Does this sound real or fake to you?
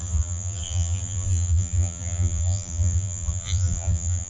fake